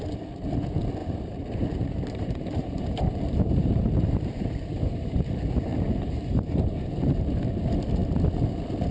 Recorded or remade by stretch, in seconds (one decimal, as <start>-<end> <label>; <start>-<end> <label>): 0.0-1.0 recorded; 1.0-5.3 remade; 5.3-5.7 recorded; 5.7-7.3 remade; 7.3-8.9 recorded